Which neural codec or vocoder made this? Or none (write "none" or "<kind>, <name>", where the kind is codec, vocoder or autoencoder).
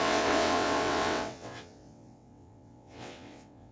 vocoder, WaveNeXt